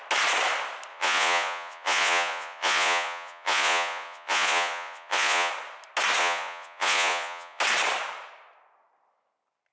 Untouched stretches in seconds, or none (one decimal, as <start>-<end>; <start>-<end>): 0.0-0.9; 5.5-6.2; 7.6-9.7